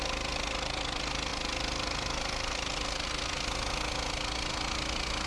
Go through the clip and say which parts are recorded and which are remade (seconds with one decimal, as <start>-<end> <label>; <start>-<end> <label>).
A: 0.0-5.3 recorded